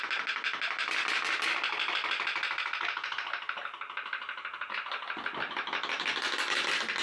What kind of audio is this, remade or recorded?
recorded